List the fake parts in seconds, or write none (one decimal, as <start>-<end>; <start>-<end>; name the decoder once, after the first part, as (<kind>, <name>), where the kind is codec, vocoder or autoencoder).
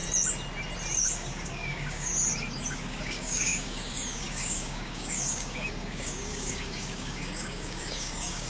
1.0-2.1 (codec, DAC); 2.7-8.5